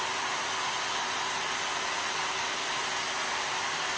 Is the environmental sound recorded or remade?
recorded